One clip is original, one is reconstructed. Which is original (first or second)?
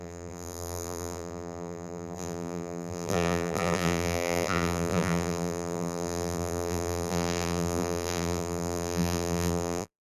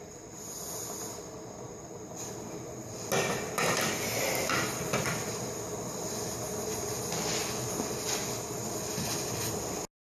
second